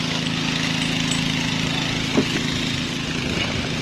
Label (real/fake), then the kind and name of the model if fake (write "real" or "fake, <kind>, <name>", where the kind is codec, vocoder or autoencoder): real